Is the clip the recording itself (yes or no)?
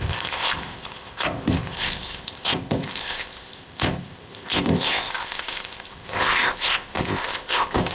no